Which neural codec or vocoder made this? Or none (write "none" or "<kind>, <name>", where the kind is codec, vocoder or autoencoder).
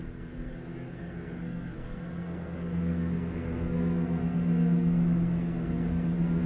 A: codec, SNAC